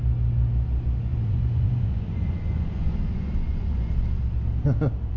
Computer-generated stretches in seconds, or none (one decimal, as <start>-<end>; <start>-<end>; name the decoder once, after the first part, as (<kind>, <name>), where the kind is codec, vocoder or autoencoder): 1.1-3.9 (vocoder, Vocos)